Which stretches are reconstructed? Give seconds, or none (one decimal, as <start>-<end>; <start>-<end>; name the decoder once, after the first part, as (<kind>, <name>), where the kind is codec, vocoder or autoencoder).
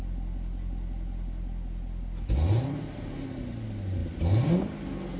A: none